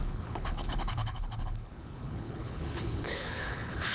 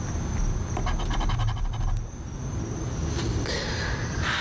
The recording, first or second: second